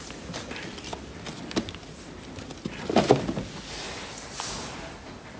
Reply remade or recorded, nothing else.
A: recorded